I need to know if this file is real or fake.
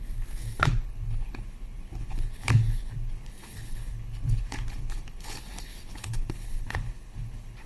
fake